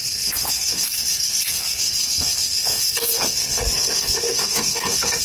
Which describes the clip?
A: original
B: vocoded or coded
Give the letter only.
B